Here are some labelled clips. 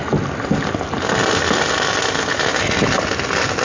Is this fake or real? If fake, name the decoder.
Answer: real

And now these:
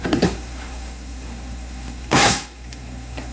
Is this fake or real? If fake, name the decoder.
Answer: fake, codec, SNAC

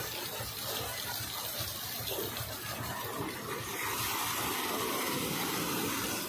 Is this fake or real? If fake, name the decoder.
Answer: real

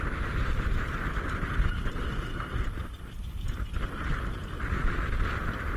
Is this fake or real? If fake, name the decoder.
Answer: real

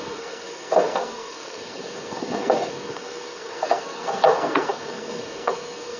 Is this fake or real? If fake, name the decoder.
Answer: fake, codec, SNAC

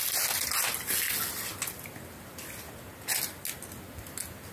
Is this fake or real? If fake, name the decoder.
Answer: real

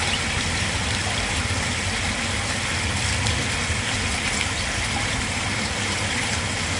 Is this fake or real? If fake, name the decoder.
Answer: real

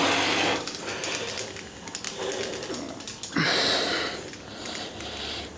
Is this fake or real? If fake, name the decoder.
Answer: real